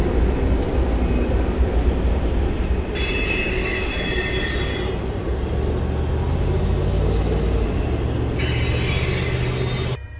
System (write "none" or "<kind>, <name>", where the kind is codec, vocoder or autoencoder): none